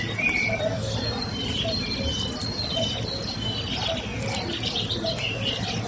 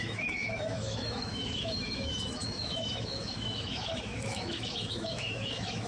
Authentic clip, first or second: first